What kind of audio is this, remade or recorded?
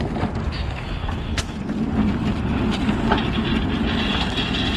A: recorded